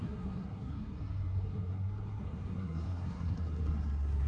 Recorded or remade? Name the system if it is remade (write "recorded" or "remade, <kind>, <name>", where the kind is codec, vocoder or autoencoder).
remade, codec, SNAC